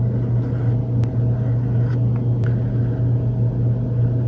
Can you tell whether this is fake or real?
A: real